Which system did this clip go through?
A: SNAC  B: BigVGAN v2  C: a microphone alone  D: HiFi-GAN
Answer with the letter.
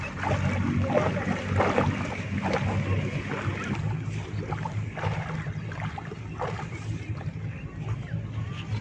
B